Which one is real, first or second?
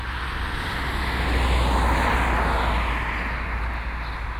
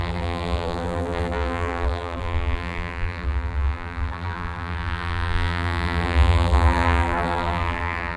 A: first